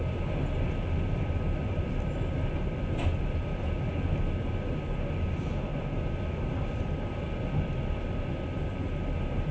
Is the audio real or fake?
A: real